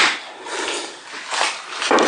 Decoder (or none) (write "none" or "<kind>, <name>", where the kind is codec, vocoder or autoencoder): none